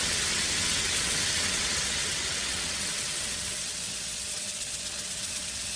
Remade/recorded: remade